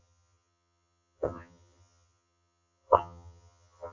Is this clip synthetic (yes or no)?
yes